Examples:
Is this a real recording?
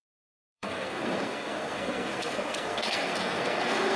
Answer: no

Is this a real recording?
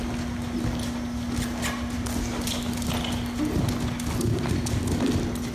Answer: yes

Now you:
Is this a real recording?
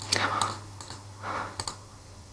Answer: yes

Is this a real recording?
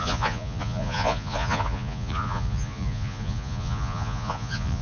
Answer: no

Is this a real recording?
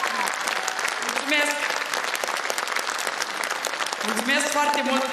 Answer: yes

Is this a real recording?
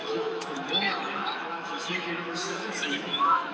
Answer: no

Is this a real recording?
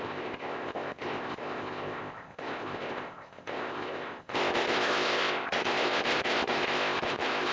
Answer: no